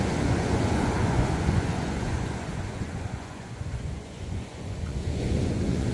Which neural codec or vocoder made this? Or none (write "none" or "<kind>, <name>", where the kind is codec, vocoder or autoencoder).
vocoder, Vocos